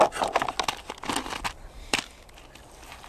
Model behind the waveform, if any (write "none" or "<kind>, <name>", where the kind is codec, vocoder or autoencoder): none